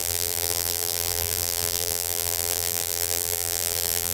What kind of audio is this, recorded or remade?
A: remade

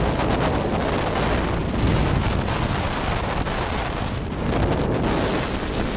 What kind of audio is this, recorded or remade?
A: recorded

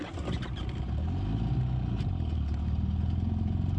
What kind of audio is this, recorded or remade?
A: recorded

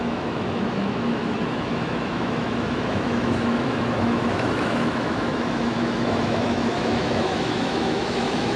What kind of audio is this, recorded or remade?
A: remade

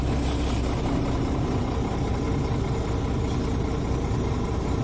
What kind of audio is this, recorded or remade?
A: recorded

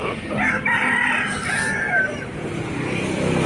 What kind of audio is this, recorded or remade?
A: remade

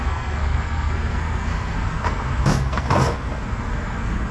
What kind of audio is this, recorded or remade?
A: remade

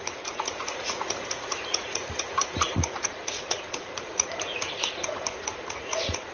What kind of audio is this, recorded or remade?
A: remade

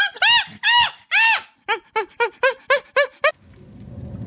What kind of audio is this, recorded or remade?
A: recorded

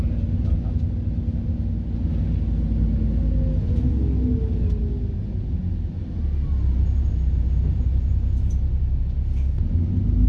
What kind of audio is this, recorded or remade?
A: recorded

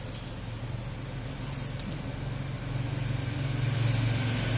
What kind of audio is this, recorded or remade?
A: recorded